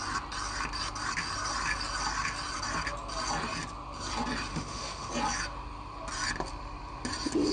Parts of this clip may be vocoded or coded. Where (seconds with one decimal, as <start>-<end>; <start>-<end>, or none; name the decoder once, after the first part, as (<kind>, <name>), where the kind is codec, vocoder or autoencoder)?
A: 4.5-5.1 (autoencoder, DAC-VAE)